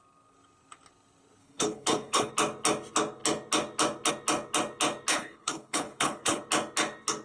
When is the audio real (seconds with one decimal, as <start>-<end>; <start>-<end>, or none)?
0.0-1.4; 2.3-5.1; 6.4-7.2